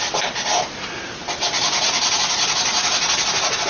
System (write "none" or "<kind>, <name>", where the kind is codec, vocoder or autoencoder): none